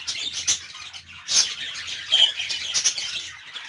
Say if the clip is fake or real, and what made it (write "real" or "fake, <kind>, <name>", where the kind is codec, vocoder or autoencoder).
real